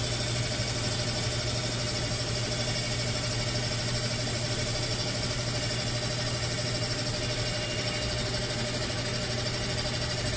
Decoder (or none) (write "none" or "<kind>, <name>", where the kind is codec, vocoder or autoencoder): none